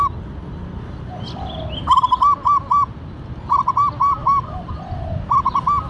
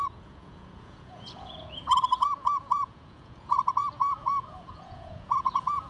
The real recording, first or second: first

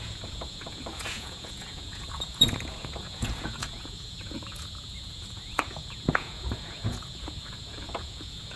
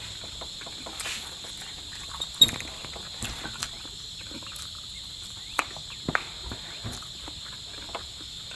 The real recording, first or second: second